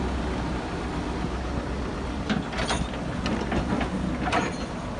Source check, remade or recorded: recorded